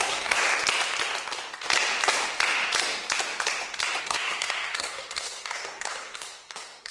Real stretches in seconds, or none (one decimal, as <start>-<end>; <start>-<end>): 0.4-4.0